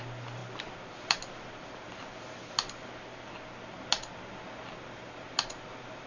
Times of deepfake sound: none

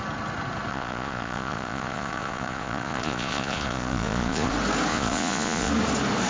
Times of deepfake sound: 0.7-4.5 (vocoder, Vocos); 4.9-5.7

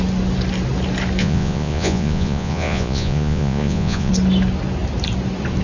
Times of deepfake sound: 1.2-4.1 (vocoder, Vocos)

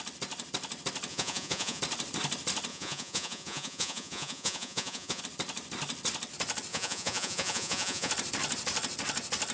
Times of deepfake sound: 1.1-1.8 (vocoder, Vocos); 2.7-5.2; 6.7-8.1

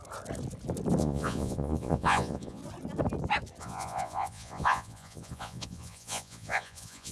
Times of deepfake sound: 1.0-2.6 (vocoder, Vocos); 3.6-7.1

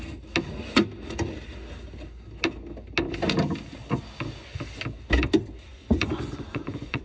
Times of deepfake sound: 5.7-7.0 (vocoder, Vocos)

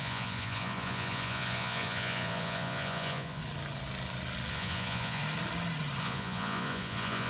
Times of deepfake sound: 0.0-3.4 (vocoder, Vocos); 4.5-5.2; 6.0-7.3